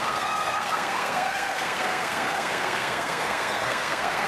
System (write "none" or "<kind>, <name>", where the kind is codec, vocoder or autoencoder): codec, SNAC